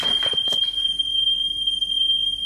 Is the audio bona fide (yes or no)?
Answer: yes